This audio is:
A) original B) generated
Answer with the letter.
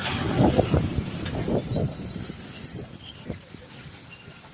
A